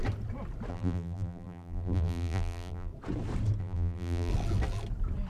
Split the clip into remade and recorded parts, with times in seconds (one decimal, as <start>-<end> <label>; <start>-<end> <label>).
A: 0.0-0.7 recorded; 0.7-2.9 remade; 2.9-3.6 recorded; 3.6-4.3 remade; 4.3-5.3 recorded